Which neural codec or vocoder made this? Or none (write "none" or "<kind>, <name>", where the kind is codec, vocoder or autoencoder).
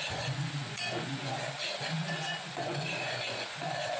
vocoder, Vocos